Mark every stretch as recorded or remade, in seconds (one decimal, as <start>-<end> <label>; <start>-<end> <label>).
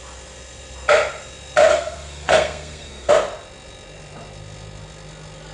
0.0-1.7 recorded; 1.7-3.1 remade; 3.1-5.5 recorded